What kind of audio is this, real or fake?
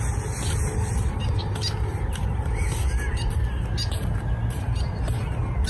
real